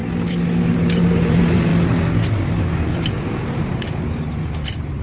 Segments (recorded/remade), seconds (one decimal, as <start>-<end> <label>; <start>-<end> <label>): 0.0-0.7 recorded; 0.7-1.7 remade; 1.7-2.9 recorded; 2.9-5.0 remade